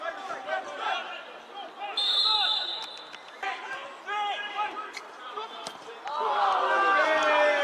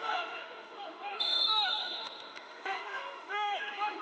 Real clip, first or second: first